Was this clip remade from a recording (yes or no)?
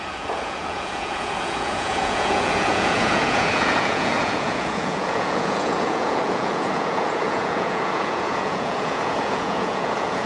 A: yes